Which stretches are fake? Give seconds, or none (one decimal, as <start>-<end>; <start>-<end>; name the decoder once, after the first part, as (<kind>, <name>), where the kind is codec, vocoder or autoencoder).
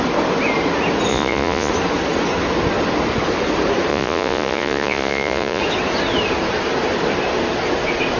1.1-1.7 (vocoder, Vocos); 3.9-5.6